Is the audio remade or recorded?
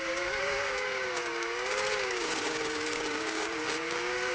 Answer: remade